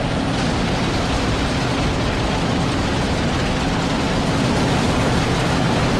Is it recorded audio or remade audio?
recorded